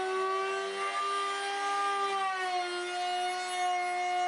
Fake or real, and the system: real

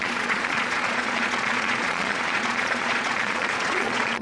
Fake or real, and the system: fake, vocoder, Vocos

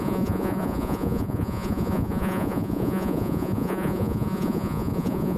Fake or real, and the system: fake, vocoder, Vocos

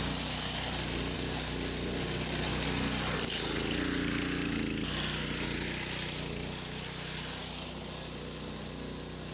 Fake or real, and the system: real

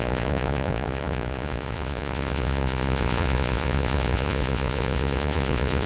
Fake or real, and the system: fake, vocoder, Vocos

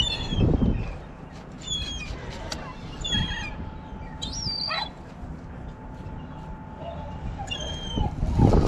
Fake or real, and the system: real